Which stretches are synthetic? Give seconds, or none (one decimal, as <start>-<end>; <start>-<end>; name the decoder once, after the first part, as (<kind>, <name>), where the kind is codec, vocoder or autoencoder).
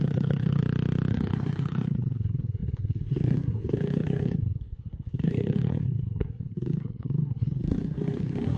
0.0-0.6 (codec, SNAC); 1.1-8.6